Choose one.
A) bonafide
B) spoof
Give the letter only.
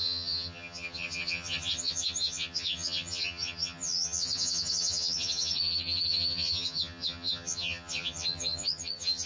B